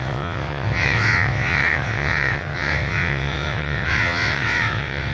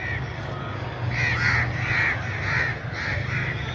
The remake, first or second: first